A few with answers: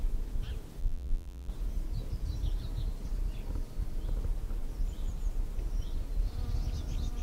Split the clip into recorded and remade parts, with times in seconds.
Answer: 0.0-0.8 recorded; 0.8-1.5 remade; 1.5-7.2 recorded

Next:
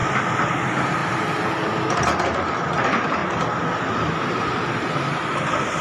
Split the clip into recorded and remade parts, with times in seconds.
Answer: 0.0-0.6 recorded; 0.6-1.0 remade; 1.0-1.9 recorded; 1.9-3.2 remade; 3.2-4.2 recorded; 4.2-5.8 remade